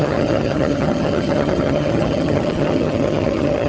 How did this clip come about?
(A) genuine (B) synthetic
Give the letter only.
B